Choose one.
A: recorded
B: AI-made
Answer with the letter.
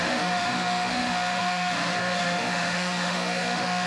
B